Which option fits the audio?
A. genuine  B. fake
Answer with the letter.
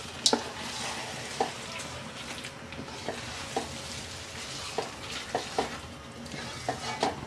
A